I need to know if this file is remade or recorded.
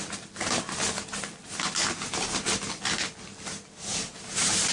recorded